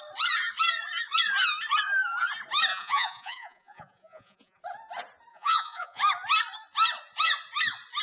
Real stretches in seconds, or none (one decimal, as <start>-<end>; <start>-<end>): 0.0-2.7; 4.6-5.3; 6.0-8.0